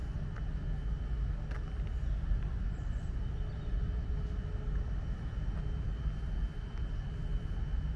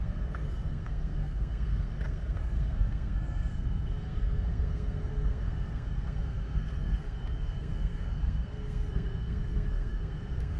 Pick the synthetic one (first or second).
second